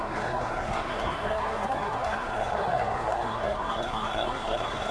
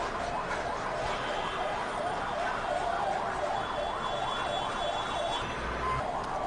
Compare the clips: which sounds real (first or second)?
second